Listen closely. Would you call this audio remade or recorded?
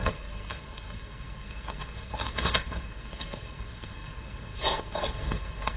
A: remade